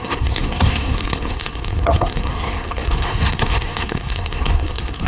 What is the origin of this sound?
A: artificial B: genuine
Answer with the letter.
A